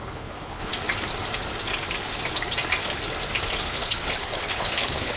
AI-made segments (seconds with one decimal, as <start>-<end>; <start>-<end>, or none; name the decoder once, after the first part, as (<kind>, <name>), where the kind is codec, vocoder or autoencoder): 0.0-0.7 (codec, HILCodec); 3.6-5.2